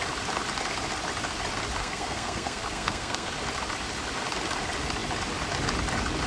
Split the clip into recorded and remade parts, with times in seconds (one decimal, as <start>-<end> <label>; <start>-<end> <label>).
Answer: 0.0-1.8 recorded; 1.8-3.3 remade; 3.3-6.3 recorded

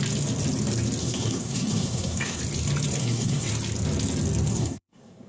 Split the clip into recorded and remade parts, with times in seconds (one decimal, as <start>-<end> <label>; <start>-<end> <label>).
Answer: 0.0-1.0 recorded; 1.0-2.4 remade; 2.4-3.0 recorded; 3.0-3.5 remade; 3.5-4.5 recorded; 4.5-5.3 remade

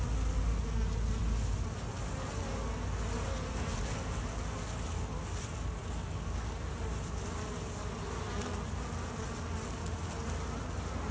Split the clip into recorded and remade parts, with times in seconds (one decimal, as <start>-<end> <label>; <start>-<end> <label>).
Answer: 0.0-11.1 recorded

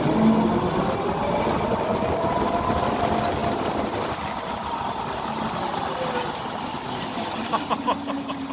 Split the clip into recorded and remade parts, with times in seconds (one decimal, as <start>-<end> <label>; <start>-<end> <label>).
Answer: 0.0-8.5 recorded